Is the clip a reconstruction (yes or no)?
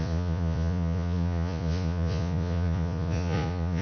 yes